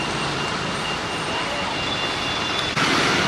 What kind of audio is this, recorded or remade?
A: recorded